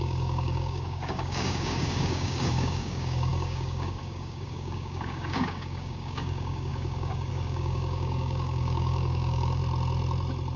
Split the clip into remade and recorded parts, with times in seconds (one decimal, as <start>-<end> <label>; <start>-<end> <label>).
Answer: 0.0-9.6 remade; 9.6-10.6 recorded